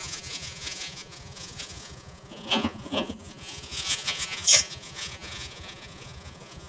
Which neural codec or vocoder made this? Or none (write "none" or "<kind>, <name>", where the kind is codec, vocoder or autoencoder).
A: vocoder, Vocos